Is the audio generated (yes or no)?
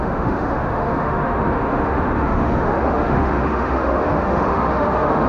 yes